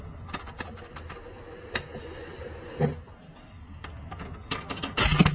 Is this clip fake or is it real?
real